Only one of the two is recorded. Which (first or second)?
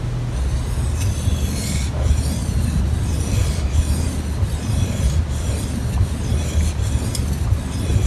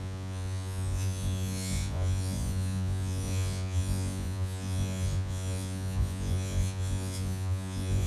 first